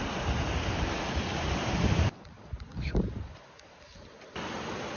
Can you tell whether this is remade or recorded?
recorded